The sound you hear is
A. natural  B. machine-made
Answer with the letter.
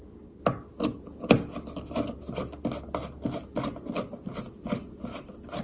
A